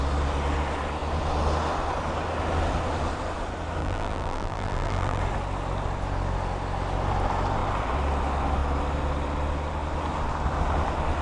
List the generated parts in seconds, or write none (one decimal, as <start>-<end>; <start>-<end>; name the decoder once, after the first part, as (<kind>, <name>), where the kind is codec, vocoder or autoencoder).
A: 3.8-5.2 (vocoder, BigVGAN v2)